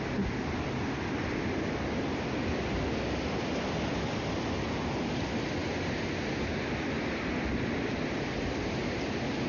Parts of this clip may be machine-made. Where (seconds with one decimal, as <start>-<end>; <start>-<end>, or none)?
none